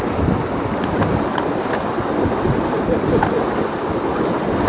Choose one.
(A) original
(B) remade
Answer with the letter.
A